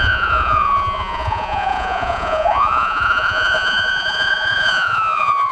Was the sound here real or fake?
fake